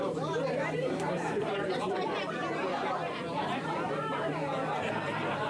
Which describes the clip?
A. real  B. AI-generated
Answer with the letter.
B